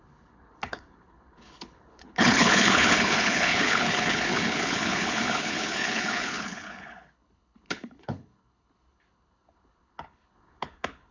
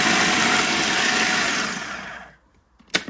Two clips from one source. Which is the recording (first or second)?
second